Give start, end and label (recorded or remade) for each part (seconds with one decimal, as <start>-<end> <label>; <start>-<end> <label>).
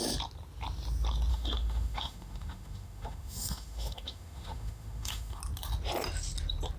0.0-1.3 recorded; 1.3-5.4 remade; 5.4-6.8 recorded